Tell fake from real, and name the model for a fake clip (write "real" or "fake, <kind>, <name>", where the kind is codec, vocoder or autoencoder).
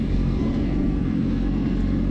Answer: fake, codec, SNAC